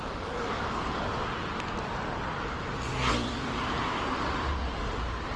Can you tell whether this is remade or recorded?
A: recorded